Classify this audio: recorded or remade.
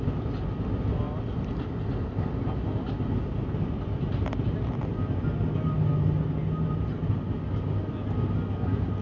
recorded